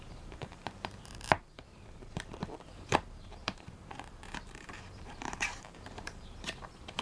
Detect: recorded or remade remade